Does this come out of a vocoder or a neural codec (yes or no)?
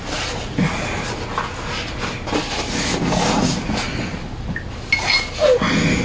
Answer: no